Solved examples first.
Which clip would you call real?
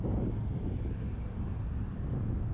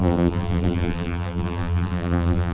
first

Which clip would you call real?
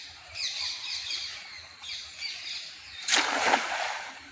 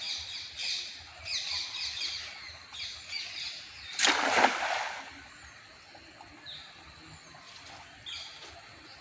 second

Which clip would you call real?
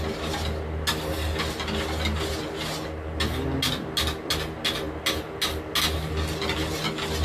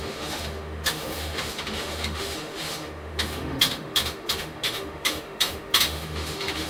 first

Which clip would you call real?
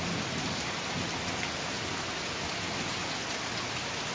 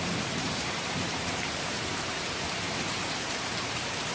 first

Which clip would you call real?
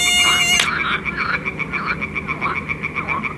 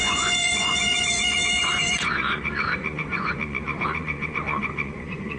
first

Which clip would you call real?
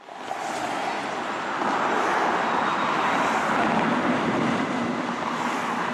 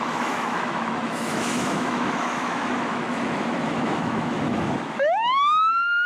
first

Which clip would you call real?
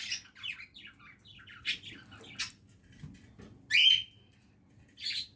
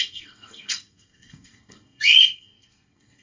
first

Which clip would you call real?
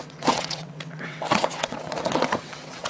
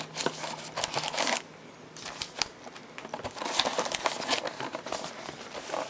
second